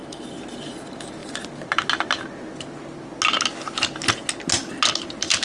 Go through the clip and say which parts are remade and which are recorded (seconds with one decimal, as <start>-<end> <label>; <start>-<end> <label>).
0.0-5.4 recorded